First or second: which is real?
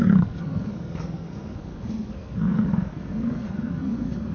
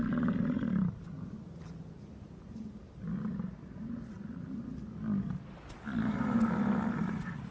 second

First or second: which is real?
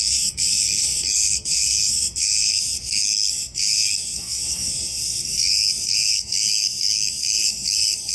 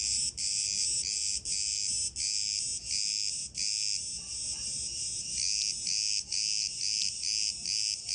second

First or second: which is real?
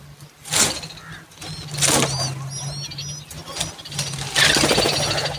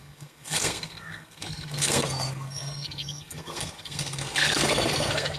first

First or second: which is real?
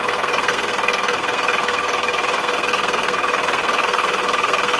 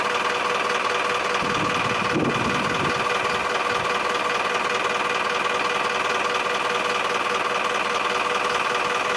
second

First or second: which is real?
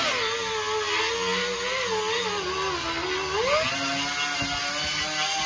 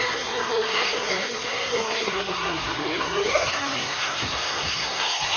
first